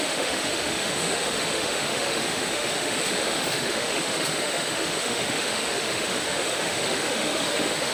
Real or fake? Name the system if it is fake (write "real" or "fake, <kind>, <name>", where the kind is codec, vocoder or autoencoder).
fake, autoencoder, DAC-VAE